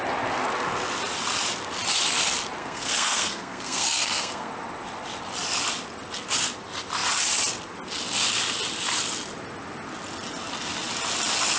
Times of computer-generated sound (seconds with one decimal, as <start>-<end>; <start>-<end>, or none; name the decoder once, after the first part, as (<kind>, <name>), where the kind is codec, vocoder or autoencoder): 2.6-4.5 (codec, SNAC)